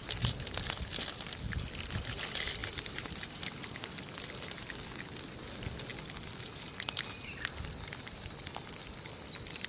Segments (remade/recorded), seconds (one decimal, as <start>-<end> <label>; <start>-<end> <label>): 0.0-9.7 recorded